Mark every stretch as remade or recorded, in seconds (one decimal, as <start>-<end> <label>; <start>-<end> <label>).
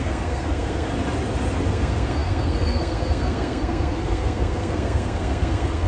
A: 0.0-0.9 remade; 0.9-1.7 recorded; 1.7-5.9 remade